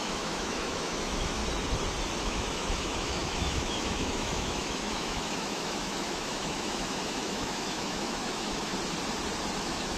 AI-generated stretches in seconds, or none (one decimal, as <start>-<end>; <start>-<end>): 0.0-1.4; 2.2-8.7; 9.6-10.0